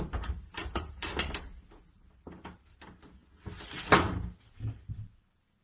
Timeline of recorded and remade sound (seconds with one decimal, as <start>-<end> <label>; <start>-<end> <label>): 0.0-0.6 recorded; 0.6-1.1 remade; 1.1-5.6 recorded